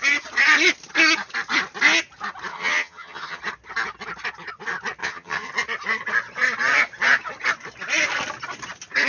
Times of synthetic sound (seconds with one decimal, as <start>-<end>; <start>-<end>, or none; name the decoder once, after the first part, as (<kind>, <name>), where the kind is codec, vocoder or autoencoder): 2.5-3.4 (vocoder, HiFi-GAN); 5.0-5.5